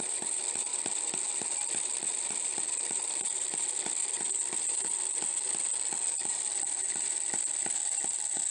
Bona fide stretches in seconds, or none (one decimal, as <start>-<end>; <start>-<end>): 0.0-8.5

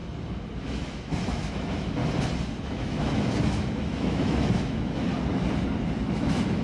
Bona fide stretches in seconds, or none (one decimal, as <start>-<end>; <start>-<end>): 0.0-0.6; 2.0-2.6; 5.1-6.0

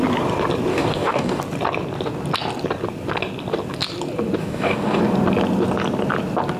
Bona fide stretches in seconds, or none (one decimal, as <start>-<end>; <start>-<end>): 0.0-0.7; 1.4-4.4; 5.0-6.6

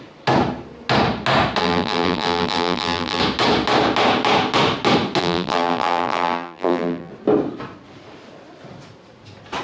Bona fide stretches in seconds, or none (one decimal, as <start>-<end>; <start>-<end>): 0.0-1.6; 3.2-5.2; 7.1-9.6

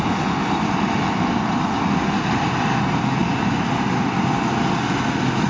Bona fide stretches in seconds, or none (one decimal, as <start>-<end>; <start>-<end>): 0.0-5.5

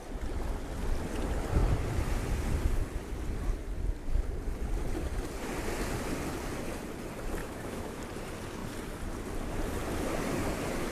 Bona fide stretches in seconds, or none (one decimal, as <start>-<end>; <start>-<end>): 0.0-7.4; 8.0-10.9

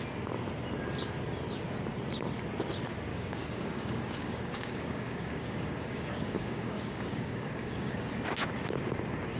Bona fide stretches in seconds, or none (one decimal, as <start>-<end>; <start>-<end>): 0.0-3.1; 8.1-9.4

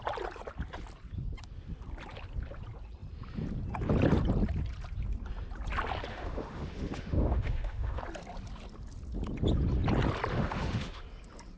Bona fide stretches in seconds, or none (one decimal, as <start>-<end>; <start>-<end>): 0.0-6.1; 8.0-10.3; 11.0-11.6